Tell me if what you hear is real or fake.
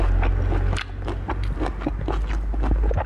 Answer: real